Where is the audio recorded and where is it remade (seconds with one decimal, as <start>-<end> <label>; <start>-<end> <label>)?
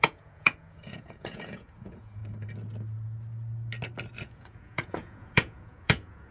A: 0.0-2.2 remade; 2.2-4.2 recorded; 4.2-6.3 remade